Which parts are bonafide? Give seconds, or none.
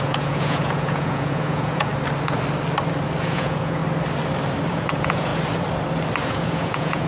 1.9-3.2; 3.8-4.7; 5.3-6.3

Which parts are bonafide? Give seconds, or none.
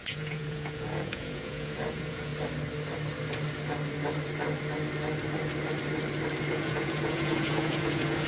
2.3-6.5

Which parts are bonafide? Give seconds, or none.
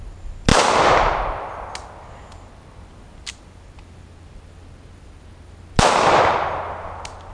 0.0-7.3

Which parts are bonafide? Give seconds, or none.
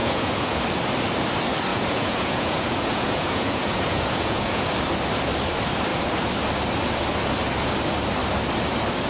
0.6-1.7; 4.7-9.1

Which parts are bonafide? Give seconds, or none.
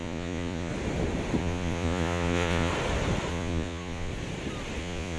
0.7-1.4; 2.7-3.3; 4.1-4.8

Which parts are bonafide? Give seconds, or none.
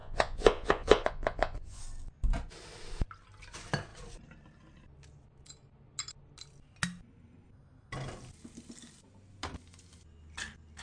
1.8-10.8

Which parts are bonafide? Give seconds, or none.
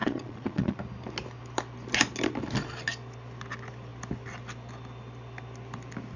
0.8-6.2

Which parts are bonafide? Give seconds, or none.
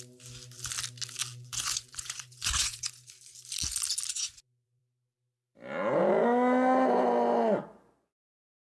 0.0-1.2; 3.1-4.1; 4.8-8.6